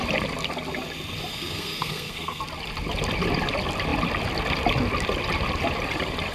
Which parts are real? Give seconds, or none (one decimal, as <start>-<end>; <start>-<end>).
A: 0.0-1.3; 2.4-6.3